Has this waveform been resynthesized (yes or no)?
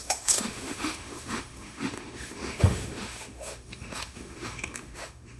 yes